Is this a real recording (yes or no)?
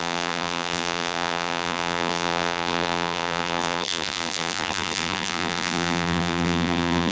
no